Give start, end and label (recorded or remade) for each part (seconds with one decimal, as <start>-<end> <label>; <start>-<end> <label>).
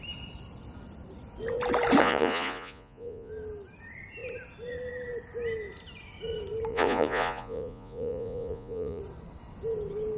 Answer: 0.0-2.0 recorded; 2.0-3.3 remade; 3.3-6.7 recorded; 6.7-9.0 remade; 9.0-10.2 recorded